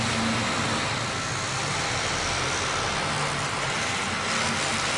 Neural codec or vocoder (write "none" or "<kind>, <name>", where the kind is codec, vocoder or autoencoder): none